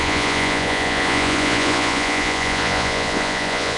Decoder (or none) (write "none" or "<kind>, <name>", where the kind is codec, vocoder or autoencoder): vocoder, Vocos